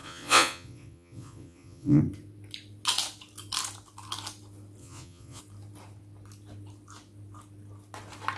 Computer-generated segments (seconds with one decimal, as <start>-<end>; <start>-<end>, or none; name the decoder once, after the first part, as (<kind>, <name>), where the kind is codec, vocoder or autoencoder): 0.0-2.0 (vocoder, Vocos); 4.8-5.4